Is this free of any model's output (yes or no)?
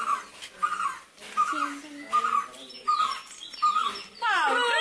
yes